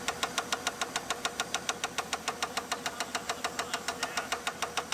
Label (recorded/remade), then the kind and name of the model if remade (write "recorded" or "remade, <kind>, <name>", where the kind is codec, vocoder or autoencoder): recorded